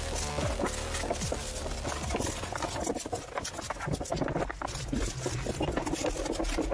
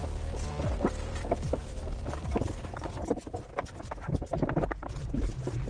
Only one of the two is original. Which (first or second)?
first